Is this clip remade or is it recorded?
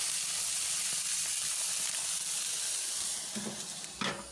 recorded